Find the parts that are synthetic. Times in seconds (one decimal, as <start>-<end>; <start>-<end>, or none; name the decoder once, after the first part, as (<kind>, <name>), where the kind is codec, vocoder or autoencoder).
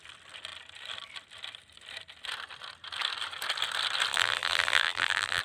4.1-5.4 (vocoder, BigVGAN v2)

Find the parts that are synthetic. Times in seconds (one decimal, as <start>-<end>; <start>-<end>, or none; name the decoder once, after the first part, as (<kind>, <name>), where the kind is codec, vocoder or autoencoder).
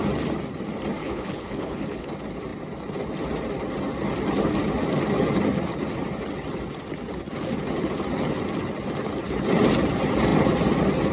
1.0-2.1 (codec, HILCodec)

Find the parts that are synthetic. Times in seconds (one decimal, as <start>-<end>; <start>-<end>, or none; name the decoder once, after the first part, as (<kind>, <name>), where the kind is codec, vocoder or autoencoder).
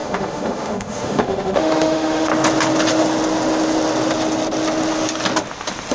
0.0-2.3 (autoencoder, DAC-VAE)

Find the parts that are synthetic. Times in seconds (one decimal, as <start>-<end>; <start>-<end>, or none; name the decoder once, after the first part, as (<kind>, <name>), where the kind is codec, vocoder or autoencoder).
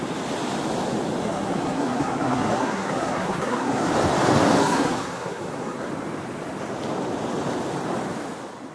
1.2-3.9 (codec, SNAC); 4.6-5.9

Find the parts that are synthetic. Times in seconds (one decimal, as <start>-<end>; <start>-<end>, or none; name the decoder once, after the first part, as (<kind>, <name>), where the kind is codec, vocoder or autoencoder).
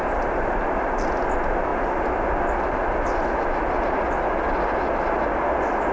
none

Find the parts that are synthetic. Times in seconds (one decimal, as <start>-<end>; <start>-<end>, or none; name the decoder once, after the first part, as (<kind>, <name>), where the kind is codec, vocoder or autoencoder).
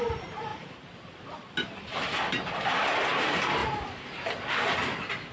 0.0-5.3 (vocoder, BigVGAN v2)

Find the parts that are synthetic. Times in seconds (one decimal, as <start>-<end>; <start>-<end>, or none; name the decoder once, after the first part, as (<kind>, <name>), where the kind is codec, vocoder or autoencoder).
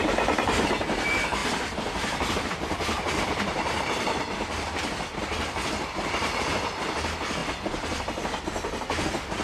1.4-5.2 (vocoder, BigVGAN v2); 7.4-8.4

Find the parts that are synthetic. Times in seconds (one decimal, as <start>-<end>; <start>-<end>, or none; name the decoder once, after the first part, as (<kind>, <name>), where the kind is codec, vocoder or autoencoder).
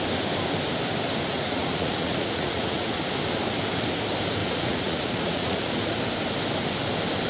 1.3-3.1 (vocoder, Vocos); 4.4-5.9